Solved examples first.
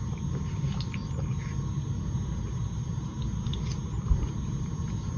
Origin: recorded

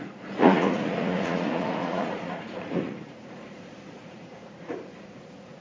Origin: remade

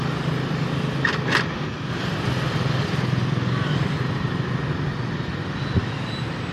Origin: recorded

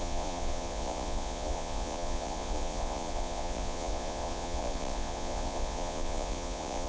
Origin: remade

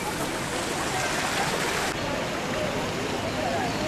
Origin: recorded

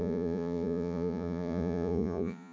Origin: remade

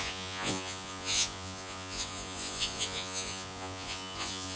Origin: remade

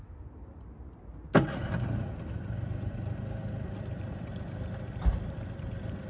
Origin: recorded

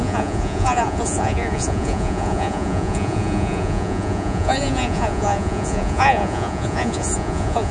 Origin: remade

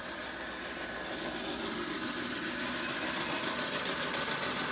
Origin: recorded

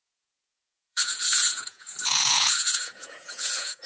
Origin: remade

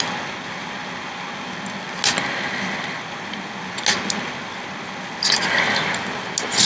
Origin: recorded